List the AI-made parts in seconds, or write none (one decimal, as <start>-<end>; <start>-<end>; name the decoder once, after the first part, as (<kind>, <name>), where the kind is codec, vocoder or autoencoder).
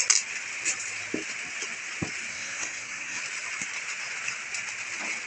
2.3-3.2 (codec, SNAC)